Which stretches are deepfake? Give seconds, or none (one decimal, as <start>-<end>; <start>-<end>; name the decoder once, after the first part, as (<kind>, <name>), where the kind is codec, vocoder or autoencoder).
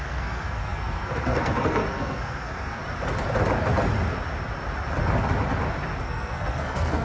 0.0-2.8 (codec, SNAC); 6.0-7.0